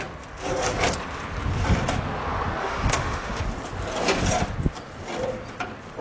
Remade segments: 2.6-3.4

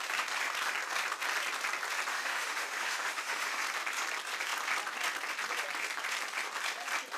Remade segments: 2.1-3.6

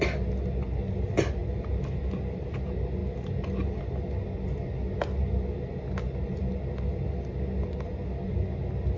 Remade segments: none

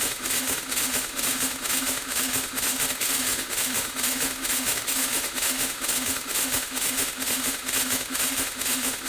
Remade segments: 0.0-9.1

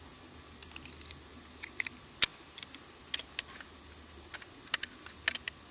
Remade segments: none

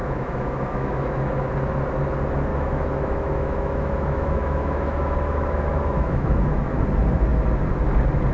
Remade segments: 0.0-1.5; 2.5-6.8

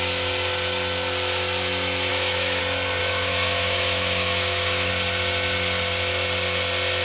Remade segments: 2.1-2.6; 3.0-4.9

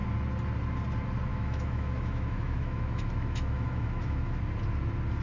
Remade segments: 1.3-4.4